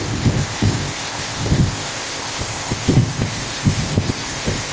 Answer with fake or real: fake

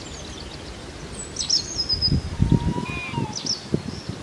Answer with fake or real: real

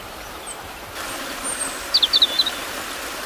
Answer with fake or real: real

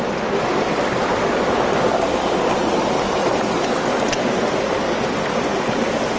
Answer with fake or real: real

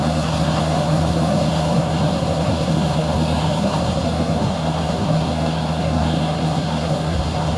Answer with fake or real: fake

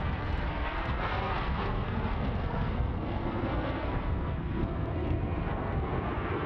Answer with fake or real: fake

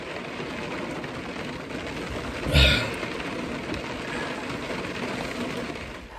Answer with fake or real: real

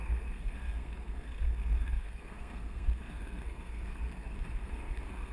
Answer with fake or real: fake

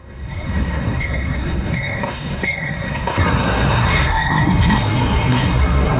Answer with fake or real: fake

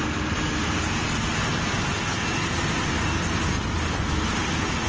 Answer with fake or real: real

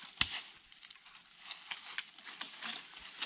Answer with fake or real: real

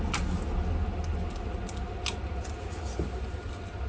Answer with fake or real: real